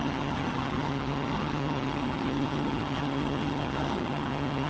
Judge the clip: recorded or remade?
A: remade